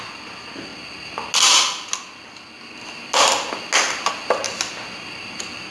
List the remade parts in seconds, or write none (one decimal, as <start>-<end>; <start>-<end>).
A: none